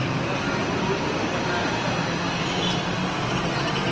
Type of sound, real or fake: real